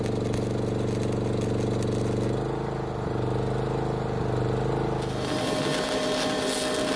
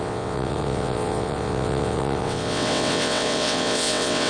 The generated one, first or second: second